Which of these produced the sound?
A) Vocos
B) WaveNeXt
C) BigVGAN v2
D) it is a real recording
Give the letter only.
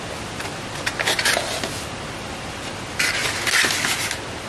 D